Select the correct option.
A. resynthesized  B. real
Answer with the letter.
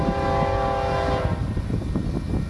B